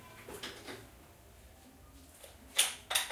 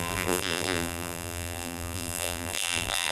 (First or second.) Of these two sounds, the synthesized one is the second